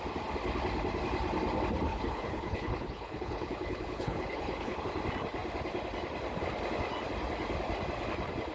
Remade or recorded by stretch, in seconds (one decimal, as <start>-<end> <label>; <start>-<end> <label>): 0.0-1.9 recorded; 1.9-4.8 remade; 4.8-8.5 recorded